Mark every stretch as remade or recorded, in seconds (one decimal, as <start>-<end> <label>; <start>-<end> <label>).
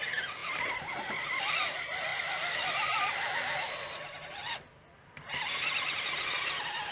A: 0.0-6.9 recorded